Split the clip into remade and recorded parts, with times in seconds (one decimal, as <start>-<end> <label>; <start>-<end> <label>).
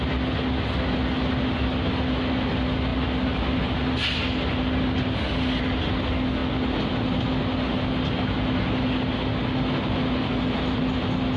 0.0-11.4 recorded